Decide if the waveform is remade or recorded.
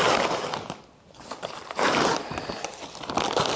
recorded